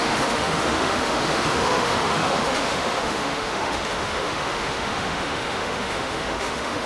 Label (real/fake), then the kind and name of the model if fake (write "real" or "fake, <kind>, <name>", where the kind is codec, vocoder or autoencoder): fake, autoencoder, DAC-VAE